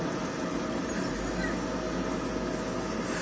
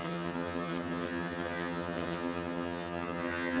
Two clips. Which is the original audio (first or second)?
first